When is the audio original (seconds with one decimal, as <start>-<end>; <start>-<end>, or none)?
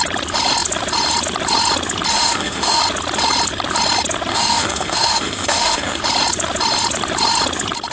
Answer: 0.0-2.1; 2.8-4.3; 6.0-7.9